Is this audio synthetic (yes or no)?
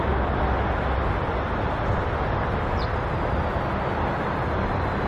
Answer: no